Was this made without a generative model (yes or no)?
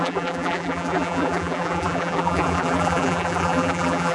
no